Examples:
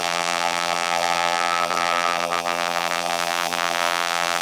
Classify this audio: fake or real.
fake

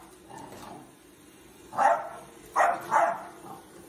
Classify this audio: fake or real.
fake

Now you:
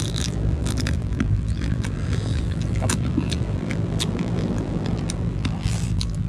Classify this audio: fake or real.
fake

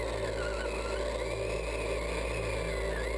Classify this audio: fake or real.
real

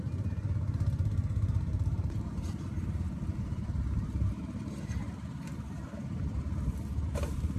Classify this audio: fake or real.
fake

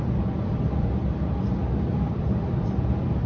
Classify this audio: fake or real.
fake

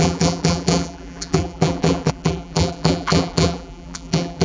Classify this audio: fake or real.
fake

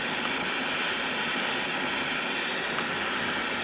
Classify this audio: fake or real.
real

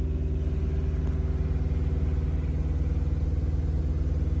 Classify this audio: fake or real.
real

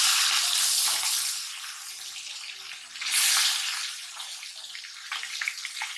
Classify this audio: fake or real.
real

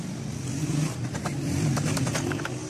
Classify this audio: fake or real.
real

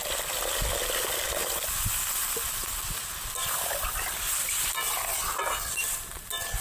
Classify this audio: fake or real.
real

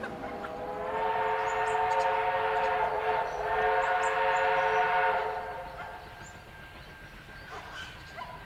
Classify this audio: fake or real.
real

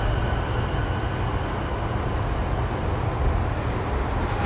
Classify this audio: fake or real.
real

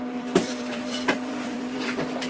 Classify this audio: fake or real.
fake